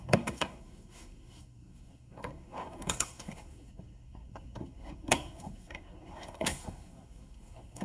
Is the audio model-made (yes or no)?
yes